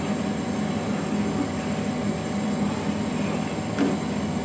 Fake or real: real